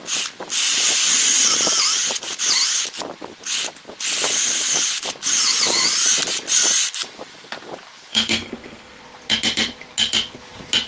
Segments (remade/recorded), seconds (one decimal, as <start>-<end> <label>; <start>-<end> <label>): 0.0-8.1 recorded; 8.1-9.0 remade; 9.0-10.9 recorded